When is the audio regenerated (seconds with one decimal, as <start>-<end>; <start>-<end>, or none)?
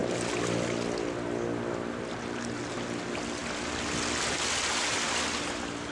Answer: none